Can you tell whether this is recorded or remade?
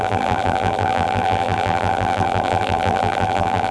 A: remade